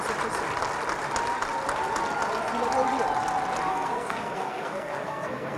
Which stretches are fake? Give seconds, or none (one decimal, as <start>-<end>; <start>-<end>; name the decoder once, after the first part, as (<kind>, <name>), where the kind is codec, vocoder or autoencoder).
3.7-5.6 (codec, SNAC)